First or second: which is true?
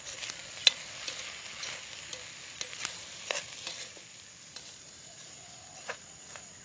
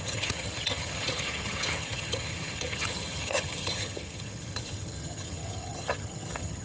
first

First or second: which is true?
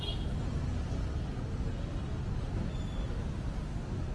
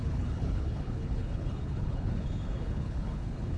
first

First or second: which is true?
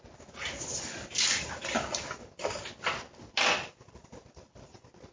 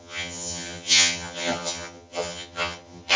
first